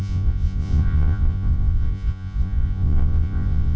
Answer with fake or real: fake